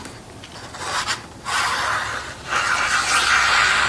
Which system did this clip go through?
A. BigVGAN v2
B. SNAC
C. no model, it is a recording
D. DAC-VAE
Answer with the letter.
C